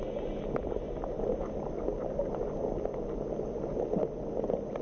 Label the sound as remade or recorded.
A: recorded